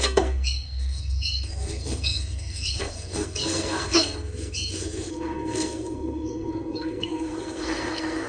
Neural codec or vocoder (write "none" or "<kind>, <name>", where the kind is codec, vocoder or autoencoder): codec, SNAC